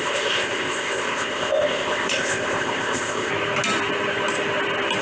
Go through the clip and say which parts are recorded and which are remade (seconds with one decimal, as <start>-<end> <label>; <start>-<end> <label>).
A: 0.0-3.3 remade; 3.3-5.0 recorded